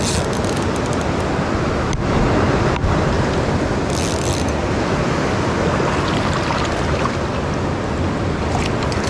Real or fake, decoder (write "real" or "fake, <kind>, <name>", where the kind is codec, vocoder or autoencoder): real